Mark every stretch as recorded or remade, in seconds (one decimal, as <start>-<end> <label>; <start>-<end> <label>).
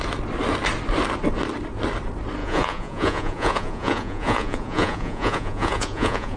0.0-2.4 recorded; 2.4-6.4 remade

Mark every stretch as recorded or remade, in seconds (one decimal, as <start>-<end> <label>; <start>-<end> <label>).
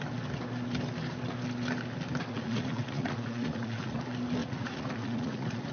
0.0-2.3 recorded; 2.3-4.0 remade; 4.0-4.4 recorded; 4.4-5.7 remade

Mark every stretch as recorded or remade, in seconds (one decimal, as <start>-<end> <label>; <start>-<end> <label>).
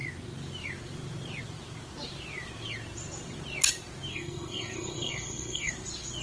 0.0-4.1 recorded; 4.1-5.7 remade; 5.7-6.2 recorded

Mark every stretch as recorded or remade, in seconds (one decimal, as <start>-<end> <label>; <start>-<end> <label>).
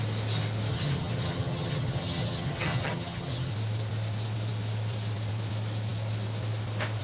0.0-0.7 recorded; 0.7-3.5 remade; 3.5-7.0 recorded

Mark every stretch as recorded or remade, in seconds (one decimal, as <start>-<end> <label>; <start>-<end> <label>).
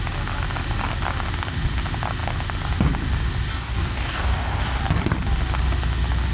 0.0-3.5 recorded; 3.5-4.8 remade; 4.8-6.3 recorded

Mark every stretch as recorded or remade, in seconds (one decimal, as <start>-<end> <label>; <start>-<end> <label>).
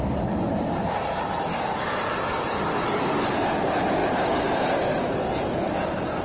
0.0-6.2 recorded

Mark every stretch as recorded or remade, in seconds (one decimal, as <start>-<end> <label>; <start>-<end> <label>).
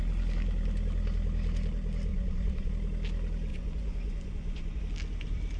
0.0-2.1 recorded; 2.1-2.7 remade; 2.7-3.5 recorded; 3.5-4.8 remade; 4.8-5.6 recorded